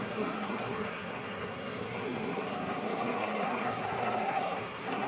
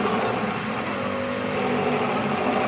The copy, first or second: first